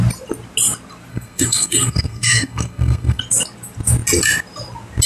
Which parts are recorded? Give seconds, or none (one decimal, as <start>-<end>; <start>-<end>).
0.0-1.1; 3.2-5.1